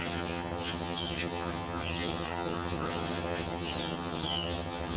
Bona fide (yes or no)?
no